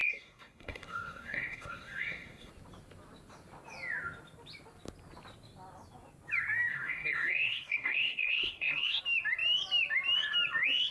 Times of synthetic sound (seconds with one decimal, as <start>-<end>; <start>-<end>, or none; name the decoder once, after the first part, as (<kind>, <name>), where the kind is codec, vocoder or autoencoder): 0.0-2.5 (codec, SNAC); 6.7-9.0